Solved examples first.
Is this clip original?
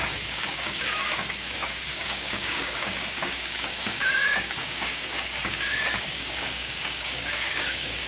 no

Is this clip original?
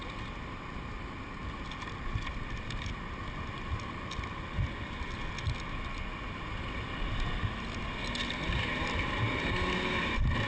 yes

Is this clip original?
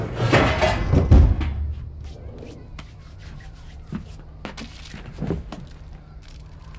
yes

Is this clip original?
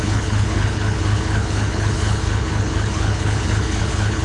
no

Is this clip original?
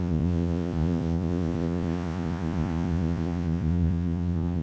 no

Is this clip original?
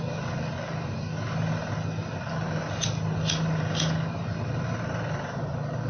yes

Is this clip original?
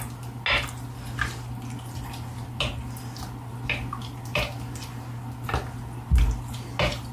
yes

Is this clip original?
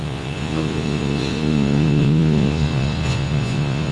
no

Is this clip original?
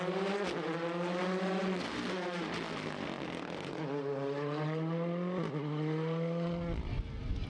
yes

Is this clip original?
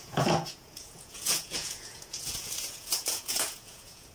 no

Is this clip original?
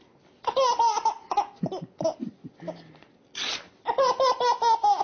yes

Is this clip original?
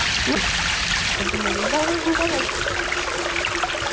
yes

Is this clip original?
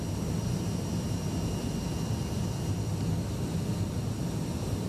yes